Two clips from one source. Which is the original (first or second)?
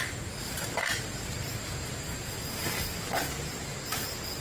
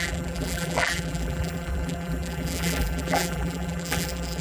first